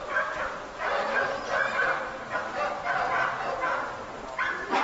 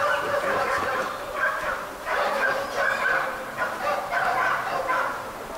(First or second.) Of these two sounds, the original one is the first